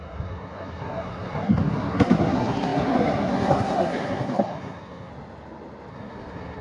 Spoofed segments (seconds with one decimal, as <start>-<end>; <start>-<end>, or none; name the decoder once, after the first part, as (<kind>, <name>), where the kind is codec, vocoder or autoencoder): 0.0-5.1 (codec, SNAC); 5.9-6.6